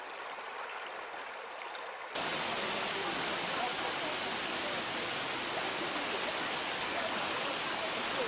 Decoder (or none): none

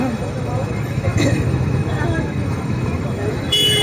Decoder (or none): autoencoder, DAC-VAE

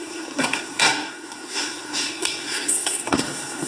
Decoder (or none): codec, SNAC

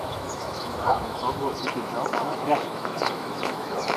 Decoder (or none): autoencoder, DAC-VAE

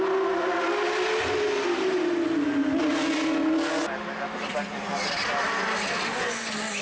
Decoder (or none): none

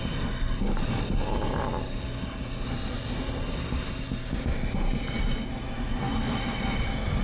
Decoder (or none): none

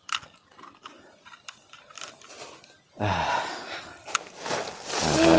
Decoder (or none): none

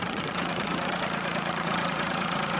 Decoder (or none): vocoder, Vocos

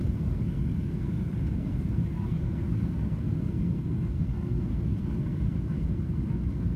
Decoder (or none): codec, SNAC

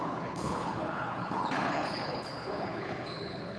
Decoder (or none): codec, HILCodec